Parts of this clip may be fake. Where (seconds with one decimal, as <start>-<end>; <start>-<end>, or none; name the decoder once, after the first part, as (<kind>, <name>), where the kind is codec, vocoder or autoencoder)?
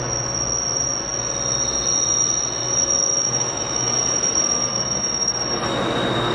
3.2-3.9 (autoencoder, DAC-VAE); 4.7-5.3